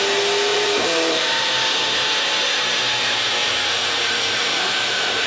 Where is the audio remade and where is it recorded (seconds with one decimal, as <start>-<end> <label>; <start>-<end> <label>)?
0.0-0.5 recorded; 0.5-1.5 remade; 1.5-3.4 recorded; 3.4-5.3 remade